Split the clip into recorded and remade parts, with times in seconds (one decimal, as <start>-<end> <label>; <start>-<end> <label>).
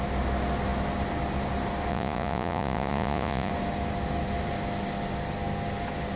0.0-1.9 recorded; 1.9-3.5 remade; 3.5-6.2 recorded